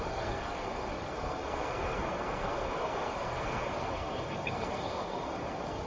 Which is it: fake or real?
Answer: fake